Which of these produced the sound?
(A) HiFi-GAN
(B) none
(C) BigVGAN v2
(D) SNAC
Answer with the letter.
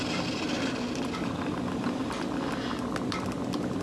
B